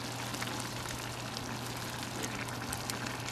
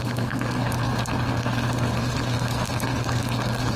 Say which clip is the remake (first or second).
second